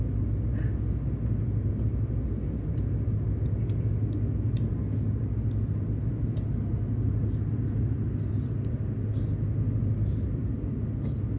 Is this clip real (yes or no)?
yes